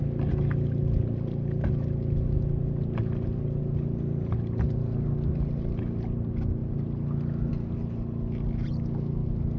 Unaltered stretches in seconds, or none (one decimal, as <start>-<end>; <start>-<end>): 0.0-9.6